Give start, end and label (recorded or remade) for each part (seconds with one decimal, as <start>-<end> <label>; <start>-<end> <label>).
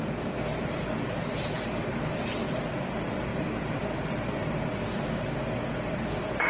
0.0-0.5 recorded; 0.5-2.6 remade; 2.6-3.3 recorded; 3.3-4.5 remade; 4.5-6.5 recorded